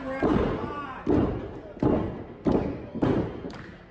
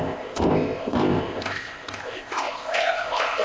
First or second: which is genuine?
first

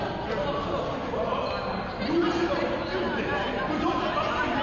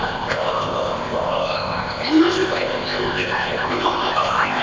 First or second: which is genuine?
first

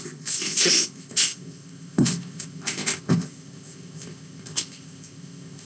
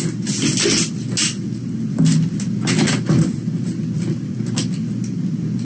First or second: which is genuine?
second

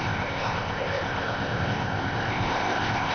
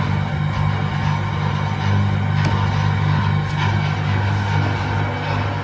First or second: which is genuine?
second